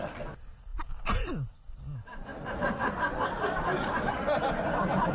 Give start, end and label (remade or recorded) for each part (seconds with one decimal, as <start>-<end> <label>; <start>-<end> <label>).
0.0-5.1 recorded